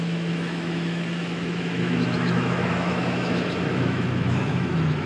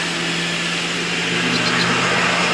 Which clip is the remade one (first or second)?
first